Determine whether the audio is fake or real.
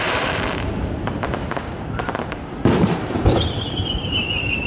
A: fake